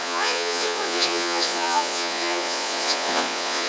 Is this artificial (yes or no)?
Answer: yes